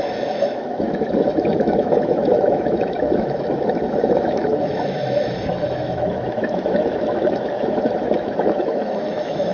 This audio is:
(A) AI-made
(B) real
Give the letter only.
A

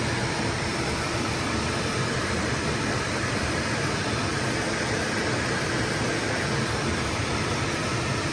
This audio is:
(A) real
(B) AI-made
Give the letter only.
B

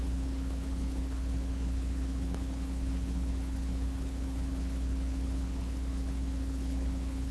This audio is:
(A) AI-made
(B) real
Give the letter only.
A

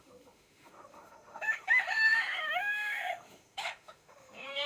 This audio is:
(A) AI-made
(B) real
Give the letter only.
A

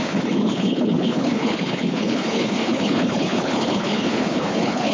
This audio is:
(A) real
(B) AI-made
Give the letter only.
B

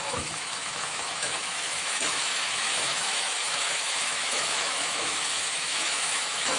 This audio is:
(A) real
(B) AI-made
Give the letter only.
B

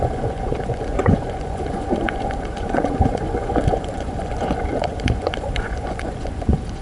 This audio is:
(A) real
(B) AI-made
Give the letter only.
B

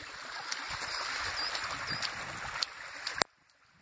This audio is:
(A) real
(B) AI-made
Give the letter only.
A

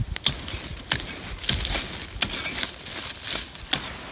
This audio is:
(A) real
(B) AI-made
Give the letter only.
A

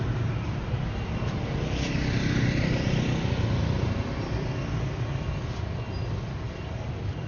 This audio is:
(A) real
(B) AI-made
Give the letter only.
B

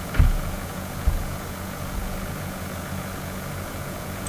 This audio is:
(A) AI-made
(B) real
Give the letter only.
A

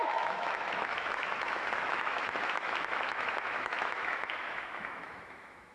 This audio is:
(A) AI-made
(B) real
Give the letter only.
A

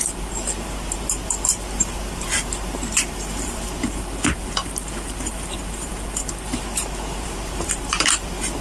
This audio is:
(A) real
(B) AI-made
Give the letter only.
B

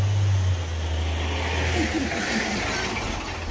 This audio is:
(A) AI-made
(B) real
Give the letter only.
B